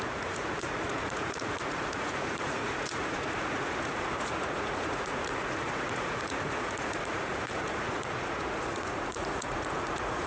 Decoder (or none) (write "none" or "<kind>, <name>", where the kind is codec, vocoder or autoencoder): vocoder, Vocos